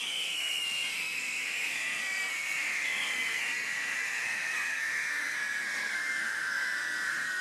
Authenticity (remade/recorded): remade